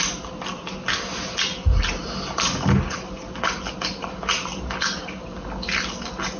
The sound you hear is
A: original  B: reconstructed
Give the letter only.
A